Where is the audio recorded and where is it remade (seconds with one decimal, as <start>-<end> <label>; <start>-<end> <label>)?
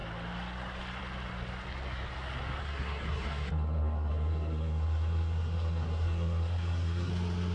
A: 0.0-2.6 recorded; 2.6-7.1 remade; 7.1-7.5 recorded